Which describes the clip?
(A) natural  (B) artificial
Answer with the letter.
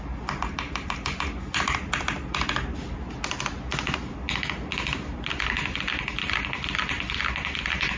A